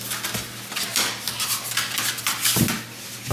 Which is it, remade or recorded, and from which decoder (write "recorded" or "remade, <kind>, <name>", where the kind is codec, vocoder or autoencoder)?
recorded